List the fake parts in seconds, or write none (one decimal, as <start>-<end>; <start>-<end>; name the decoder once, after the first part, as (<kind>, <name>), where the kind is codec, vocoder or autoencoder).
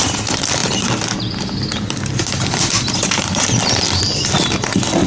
none